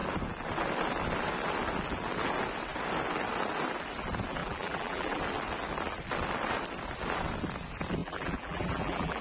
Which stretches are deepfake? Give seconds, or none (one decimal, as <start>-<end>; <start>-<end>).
4.4-5.2; 8.0-9.2